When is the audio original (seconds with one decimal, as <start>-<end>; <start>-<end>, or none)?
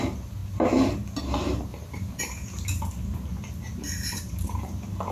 0.4-1.2; 3.3-4.1